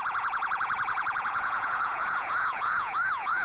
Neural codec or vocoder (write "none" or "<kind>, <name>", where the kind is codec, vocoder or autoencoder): vocoder, Vocos